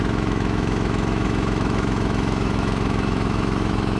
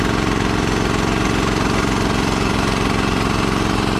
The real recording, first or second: second